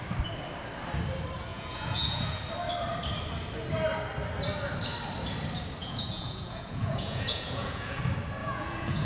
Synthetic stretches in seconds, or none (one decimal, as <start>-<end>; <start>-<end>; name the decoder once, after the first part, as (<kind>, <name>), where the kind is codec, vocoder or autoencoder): 1.5-2.4 (vocoder, Vocos); 5.8-8.0; 8.4-9.1